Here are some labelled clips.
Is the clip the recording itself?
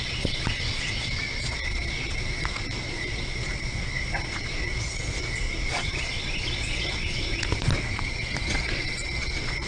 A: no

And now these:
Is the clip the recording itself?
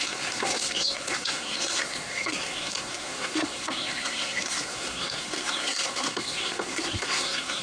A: no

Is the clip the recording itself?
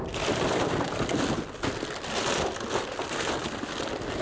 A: yes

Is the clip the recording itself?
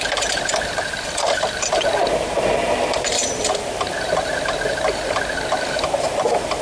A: no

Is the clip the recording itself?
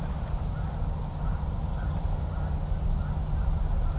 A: yes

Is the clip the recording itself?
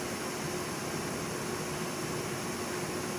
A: yes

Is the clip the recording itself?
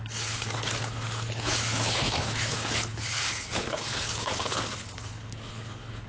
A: no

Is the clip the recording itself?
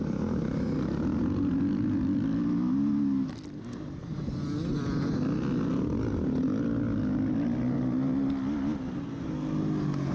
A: yes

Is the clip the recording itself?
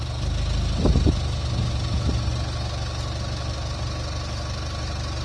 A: yes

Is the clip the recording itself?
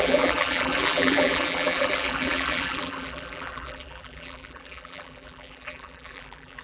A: no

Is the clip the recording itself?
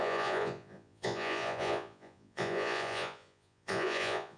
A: no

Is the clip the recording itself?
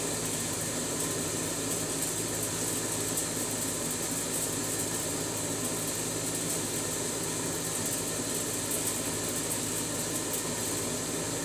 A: yes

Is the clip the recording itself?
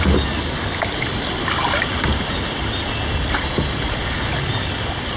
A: yes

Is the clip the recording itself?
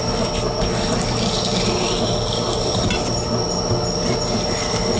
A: yes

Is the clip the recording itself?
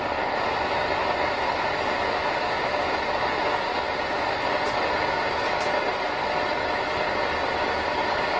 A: yes